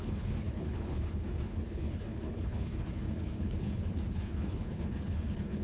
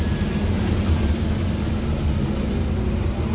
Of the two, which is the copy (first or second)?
first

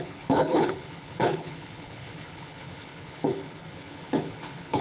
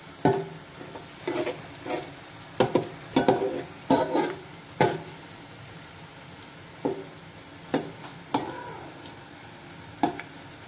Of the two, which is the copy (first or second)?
first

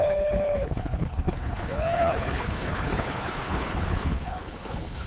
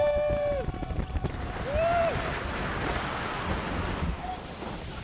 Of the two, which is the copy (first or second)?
first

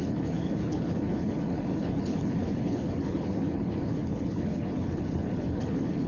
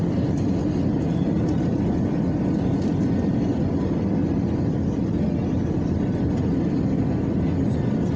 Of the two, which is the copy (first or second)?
first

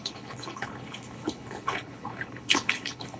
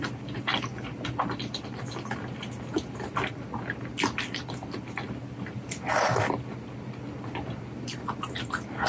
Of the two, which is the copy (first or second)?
first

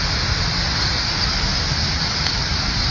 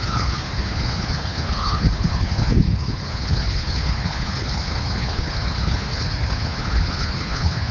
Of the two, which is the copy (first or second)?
second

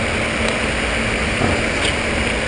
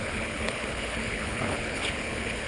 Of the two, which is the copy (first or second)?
second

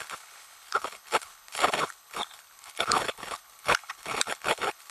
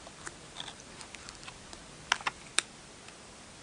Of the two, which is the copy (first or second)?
first